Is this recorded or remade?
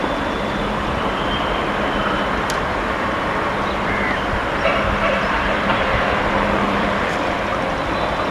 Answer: remade